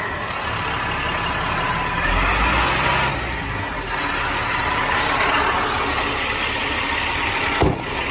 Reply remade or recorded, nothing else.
recorded